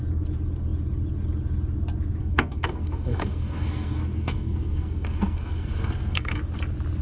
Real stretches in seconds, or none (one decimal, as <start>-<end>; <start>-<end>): 0.0-2.2; 6.4-7.0